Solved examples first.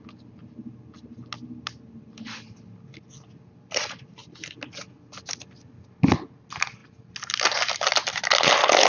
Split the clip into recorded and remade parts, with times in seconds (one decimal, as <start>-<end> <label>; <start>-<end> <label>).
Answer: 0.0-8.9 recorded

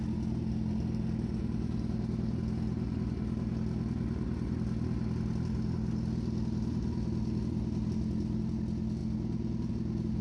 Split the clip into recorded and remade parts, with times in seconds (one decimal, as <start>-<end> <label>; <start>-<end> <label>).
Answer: 0.0-10.2 recorded

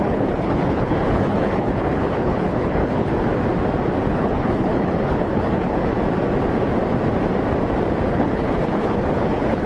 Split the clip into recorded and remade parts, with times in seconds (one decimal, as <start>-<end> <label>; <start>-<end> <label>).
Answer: 0.0-3.1 remade; 3.1-4.1 recorded; 4.1-5.9 remade; 5.9-8.1 recorded; 8.1-9.7 remade